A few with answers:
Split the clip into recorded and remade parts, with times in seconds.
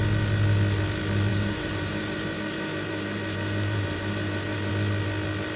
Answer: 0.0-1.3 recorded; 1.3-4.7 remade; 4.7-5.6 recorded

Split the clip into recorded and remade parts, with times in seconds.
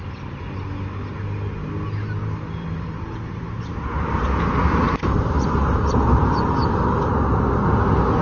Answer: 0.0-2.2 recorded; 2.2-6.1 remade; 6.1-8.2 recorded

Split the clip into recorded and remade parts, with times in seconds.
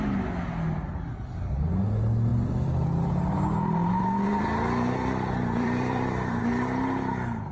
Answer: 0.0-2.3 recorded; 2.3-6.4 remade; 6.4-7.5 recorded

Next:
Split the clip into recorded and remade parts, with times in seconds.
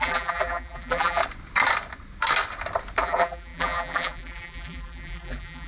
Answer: 0.0-1.2 remade; 1.2-3.0 recorded; 3.0-5.7 remade